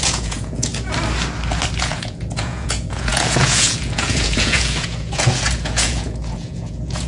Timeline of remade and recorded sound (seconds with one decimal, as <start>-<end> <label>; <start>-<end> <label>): 0.0-0.7 remade; 0.7-1.8 recorded; 1.8-7.1 remade

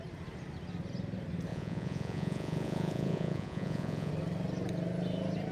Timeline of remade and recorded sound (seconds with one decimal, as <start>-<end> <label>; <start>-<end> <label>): 0.0-1.5 recorded; 1.5-4.1 remade; 4.1-5.5 recorded